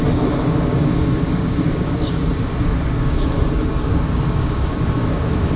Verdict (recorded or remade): remade